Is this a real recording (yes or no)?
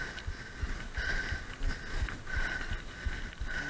yes